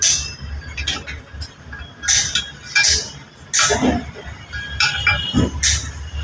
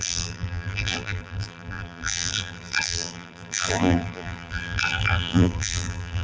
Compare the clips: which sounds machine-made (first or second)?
second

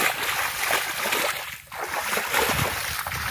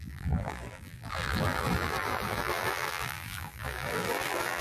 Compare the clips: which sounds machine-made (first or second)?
second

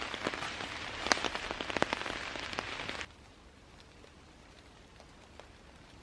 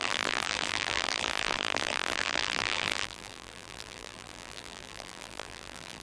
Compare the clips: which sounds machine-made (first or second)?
second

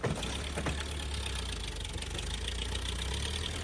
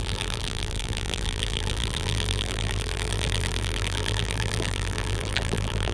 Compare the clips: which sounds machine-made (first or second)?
second